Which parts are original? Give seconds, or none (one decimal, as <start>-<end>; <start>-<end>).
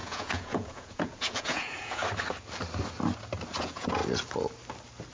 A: 2.0-3.6; 4.0-5.1